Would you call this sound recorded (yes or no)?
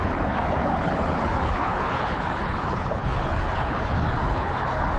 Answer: no